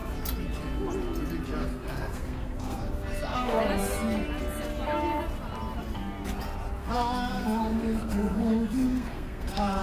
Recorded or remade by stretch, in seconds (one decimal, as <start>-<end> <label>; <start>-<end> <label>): 0.0-1.6 recorded; 1.6-3.6 remade; 3.6-6.8 recorded; 6.8-9.8 remade